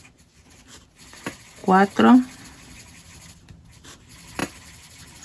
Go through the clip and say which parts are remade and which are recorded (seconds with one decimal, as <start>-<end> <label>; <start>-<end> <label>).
0.0-5.2 recorded